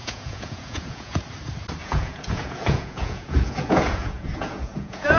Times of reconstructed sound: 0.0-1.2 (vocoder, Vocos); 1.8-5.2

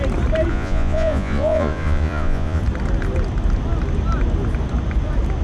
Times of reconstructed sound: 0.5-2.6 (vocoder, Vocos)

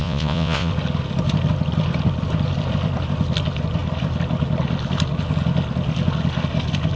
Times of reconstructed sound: 0.0-0.7 (vocoder, Vocos)

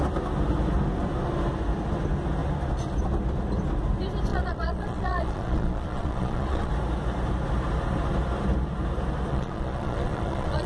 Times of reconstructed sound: 4.3-6.7 (vocoder, Vocos); 9.3-10.7

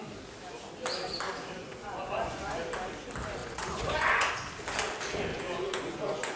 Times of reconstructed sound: 1.6-2.6 (vocoder, Vocos); 3.4-4.3; 5.3-6.4

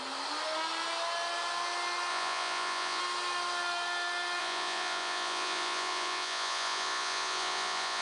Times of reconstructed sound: 2.1-3.0 (vocoder, Vocos); 4.4-8.0

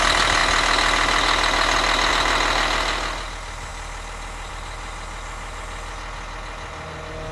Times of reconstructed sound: none